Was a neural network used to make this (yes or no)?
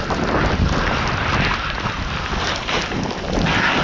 no